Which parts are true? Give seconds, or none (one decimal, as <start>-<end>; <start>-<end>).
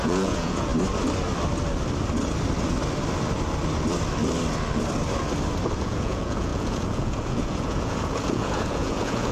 0.7-5.7